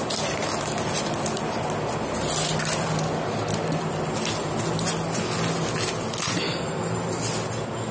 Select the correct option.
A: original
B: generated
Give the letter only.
A